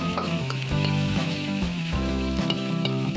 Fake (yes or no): yes